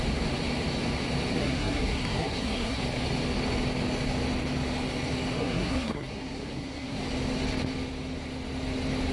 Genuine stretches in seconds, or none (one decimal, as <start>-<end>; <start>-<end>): 0.0-1.3; 2.8-5.4; 7.0-9.1